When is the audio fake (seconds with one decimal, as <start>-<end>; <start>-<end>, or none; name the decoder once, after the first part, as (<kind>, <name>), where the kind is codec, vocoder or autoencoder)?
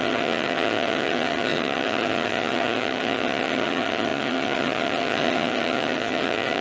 0.0-6.6 (vocoder, HiFi-GAN)